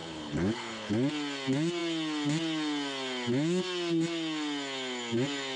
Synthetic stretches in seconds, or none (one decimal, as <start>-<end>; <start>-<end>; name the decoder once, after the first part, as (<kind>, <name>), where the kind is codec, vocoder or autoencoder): 0.0-0.9 (codec, HILCodec)